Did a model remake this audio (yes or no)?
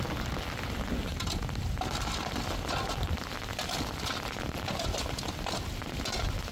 no